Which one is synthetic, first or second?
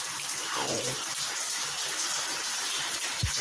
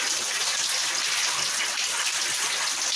first